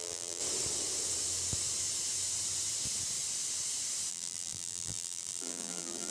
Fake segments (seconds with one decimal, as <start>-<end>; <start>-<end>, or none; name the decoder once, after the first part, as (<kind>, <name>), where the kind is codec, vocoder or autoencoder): 0.0-0.4 (vocoder, BigVGAN v2); 4.1-6.1